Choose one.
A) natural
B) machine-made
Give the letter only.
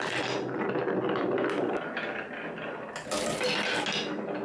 A